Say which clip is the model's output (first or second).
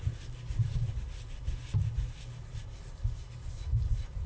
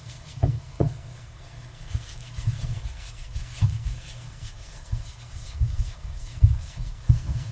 second